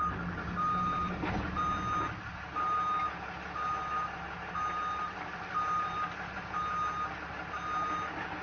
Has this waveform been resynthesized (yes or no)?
no